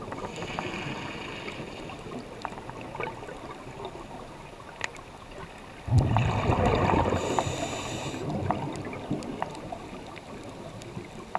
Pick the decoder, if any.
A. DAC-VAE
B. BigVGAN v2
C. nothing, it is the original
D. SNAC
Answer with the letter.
C